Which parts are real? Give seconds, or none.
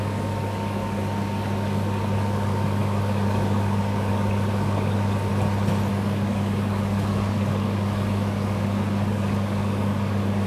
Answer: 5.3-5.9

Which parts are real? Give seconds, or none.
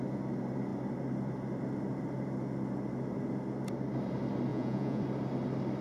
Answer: 0.0-4.5; 5.0-5.8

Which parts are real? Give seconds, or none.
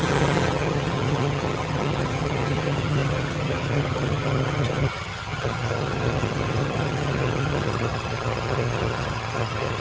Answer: none